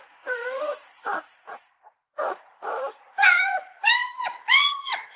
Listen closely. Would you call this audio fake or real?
fake